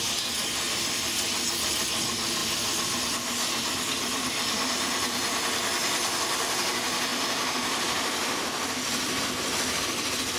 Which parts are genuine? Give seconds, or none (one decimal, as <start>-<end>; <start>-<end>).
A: 0.0-2.4; 3.0-5.8; 6.6-7.1; 9.2-10.4